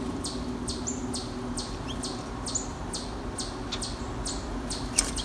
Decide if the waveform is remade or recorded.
recorded